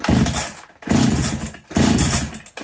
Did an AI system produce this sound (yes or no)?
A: no